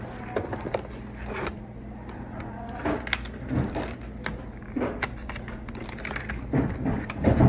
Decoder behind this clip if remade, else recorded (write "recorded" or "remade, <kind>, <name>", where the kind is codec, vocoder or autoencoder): recorded